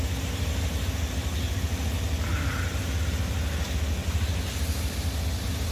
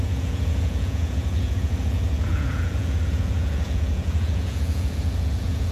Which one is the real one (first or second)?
first